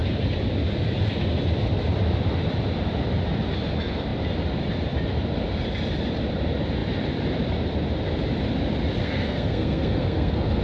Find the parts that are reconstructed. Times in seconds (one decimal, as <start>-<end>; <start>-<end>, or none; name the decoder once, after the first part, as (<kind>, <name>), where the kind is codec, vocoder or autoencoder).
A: 9.0-10.6 (codec, SNAC)